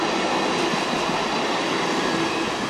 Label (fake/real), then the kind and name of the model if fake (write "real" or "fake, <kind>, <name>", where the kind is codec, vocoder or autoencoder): real